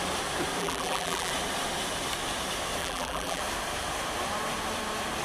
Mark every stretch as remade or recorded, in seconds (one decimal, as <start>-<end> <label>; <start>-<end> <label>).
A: 0.0-0.6 recorded; 0.6-1.3 remade; 1.3-2.8 recorded; 2.8-3.4 remade; 3.4-5.2 recorded